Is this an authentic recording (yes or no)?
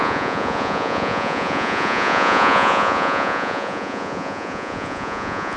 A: no